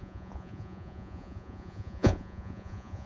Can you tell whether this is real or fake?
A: fake